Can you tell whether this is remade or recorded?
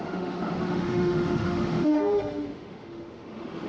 remade